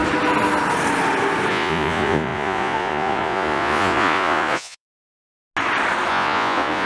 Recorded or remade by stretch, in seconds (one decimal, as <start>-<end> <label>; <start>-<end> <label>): 0.0-1.5 recorded; 1.5-4.9 remade; 4.9-6.1 recorded; 6.1-6.9 remade